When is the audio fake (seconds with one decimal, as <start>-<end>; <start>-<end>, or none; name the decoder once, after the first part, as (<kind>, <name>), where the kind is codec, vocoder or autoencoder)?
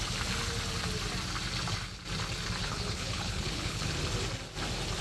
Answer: 2.6-3.9 (codec, HILCodec)